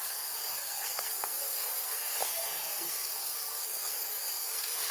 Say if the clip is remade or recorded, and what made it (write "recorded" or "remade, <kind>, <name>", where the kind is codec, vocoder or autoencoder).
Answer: remade, codec, SNAC